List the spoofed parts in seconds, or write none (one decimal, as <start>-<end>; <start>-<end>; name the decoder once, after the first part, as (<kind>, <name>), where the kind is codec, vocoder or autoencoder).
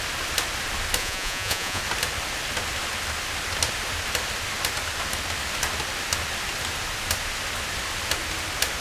1.0-1.8 (vocoder, Vocos)